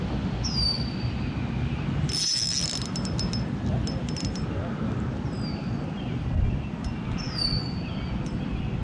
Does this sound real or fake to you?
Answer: real